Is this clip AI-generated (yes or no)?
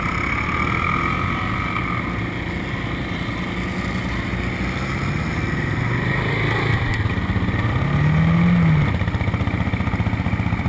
no